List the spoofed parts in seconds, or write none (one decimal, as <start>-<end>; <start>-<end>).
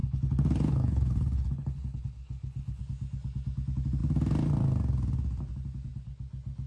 0.0-2.8